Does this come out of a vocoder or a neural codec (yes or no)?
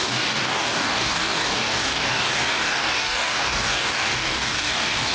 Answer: yes